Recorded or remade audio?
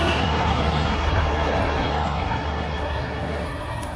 remade